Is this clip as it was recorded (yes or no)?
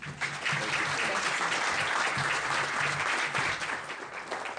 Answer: yes